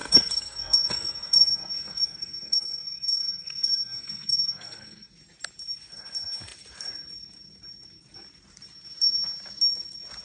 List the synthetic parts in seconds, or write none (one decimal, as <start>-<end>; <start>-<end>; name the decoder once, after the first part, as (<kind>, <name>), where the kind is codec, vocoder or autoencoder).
0.0-5.1 (codec, SNAC)